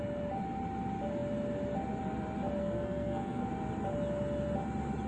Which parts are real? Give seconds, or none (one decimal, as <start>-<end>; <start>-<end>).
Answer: 0.0-2.6; 3.5-5.1